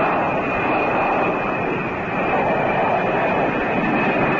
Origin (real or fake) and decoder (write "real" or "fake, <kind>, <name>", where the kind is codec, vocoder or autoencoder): real